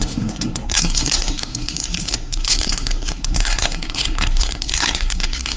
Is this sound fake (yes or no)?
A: yes